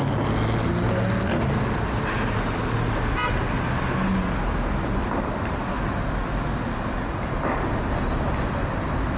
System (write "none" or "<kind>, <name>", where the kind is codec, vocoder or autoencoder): none